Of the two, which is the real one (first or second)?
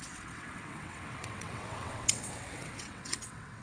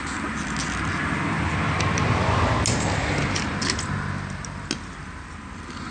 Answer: second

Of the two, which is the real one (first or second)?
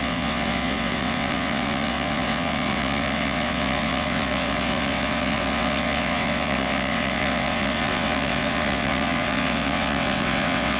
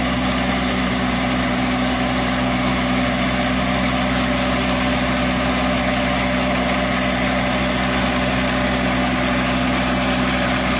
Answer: second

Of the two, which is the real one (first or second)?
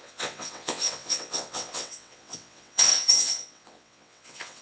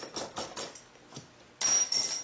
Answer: second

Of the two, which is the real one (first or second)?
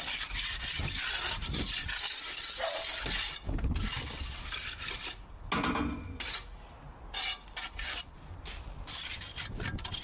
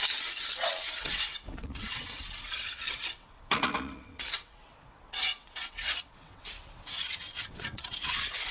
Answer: first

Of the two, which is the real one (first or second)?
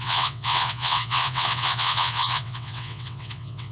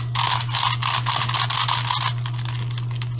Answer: second